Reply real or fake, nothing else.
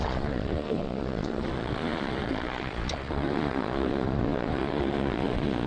fake